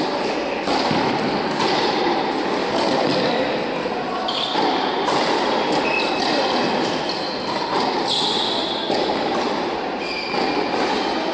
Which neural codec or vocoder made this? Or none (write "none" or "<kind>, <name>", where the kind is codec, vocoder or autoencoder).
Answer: none